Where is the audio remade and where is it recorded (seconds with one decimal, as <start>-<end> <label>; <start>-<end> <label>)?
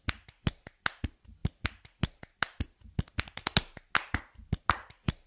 0.0-5.3 recorded